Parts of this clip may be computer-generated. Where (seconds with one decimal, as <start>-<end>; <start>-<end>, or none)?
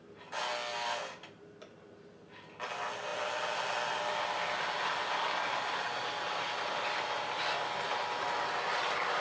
none